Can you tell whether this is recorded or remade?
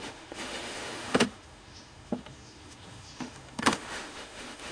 remade